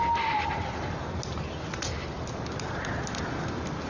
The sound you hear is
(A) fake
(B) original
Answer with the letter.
B